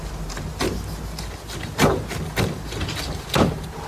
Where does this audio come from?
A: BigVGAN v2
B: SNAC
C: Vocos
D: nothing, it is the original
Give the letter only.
D